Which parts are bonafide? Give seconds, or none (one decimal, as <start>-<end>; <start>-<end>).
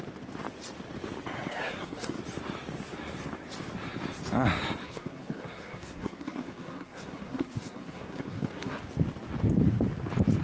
0.0-1.5; 2.2-4.8; 8.8-10.4